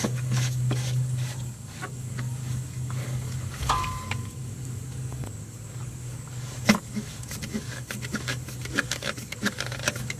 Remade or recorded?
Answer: remade